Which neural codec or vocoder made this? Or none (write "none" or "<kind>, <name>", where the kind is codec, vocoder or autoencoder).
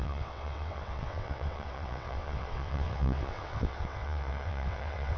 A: vocoder, WaveNeXt